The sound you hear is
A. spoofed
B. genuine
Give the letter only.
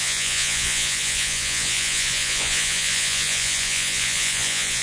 A